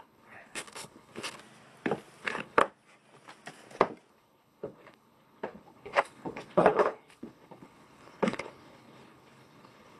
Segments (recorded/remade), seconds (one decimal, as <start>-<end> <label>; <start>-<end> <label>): 0.0-1.4 remade; 1.4-2.2 recorded; 2.2-2.6 remade; 2.6-4.1 recorded; 4.1-10.0 remade